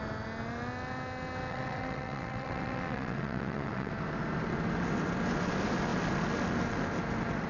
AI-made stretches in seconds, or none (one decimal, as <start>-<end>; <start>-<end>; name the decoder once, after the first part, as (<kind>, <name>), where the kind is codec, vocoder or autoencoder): 1.5-3.9 (vocoder, WaveNeXt)